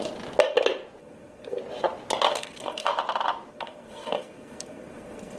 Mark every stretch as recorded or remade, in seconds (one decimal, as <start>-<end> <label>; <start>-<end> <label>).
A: 0.0-1.0 recorded; 1.0-1.6 remade; 1.6-2.3 recorded; 2.3-2.9 remade; 2.9-3.5 recorded; 3.5-5.4 remade